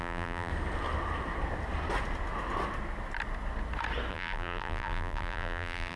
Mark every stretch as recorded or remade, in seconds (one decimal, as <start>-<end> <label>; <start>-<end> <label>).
0.0-0.5 remade; 0.5-4.1 recorded; 4.1-6.0 remade